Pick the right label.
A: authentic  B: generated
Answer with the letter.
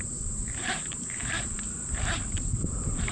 B